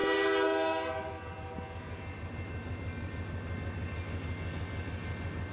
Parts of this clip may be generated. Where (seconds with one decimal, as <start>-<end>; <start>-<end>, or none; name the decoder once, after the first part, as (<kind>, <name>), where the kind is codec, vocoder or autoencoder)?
0.0-0.9 (codec, SNAC)